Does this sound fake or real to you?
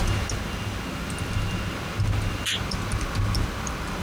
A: real